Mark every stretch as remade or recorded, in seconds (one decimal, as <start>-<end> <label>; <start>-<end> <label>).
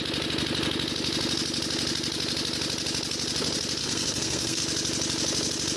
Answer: 0.0-3.8 recorded; 3.8-4.6 remade; 4.6-5.8 recorded